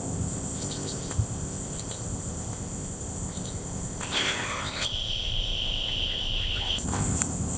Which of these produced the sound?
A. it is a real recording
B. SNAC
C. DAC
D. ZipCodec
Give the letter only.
D